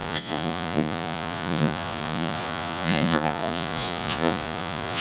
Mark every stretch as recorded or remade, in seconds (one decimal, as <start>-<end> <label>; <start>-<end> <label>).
0.0-5.0 remade